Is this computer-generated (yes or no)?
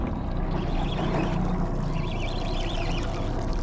no